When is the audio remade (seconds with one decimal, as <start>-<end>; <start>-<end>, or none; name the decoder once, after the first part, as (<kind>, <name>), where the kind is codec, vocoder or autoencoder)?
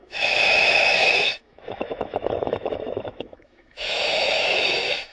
0.0-5.1 (autoencoder, DAC-VAE)